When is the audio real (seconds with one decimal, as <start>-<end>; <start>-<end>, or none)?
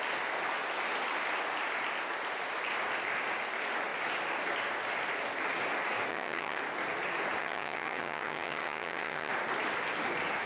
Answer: 0.0-6.1; 6.6-7.4; 9.3-10.5